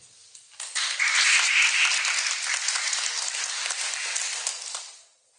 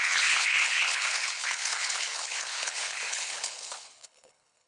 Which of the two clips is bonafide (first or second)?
first